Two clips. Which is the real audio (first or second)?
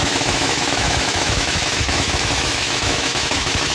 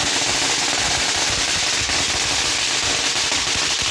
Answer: second